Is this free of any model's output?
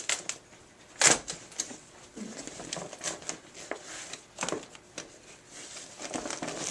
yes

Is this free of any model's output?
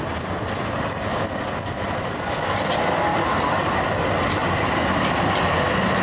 yes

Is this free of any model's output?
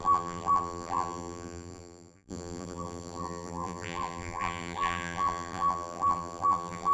no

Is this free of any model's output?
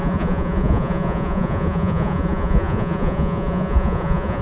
no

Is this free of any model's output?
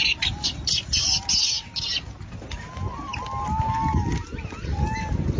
yes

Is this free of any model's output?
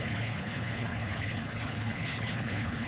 no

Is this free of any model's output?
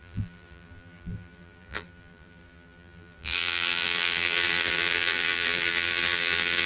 no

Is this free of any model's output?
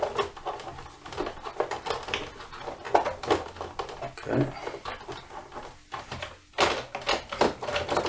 yes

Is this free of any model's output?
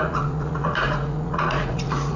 no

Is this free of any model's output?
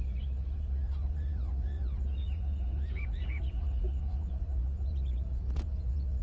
no